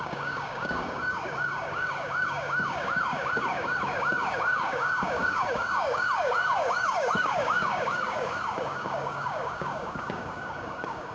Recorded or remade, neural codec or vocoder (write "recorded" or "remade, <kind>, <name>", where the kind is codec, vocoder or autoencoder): remade, codec, DAC